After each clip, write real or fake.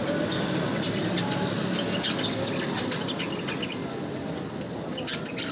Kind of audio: real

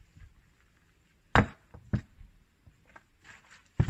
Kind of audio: real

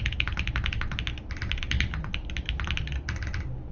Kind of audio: real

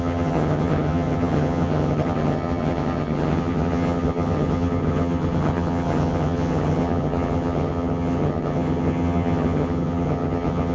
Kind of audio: fake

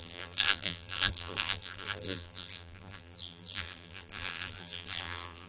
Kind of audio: fake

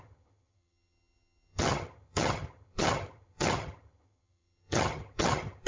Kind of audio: fake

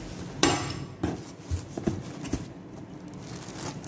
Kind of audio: real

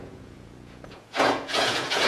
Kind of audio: fake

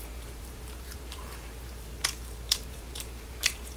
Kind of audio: fake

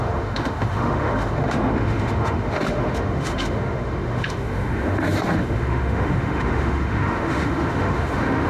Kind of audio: fake